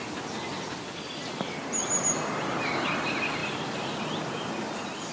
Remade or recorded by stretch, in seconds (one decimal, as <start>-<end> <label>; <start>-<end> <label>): 0.0-5.1 recorded